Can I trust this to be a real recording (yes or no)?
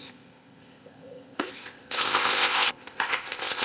no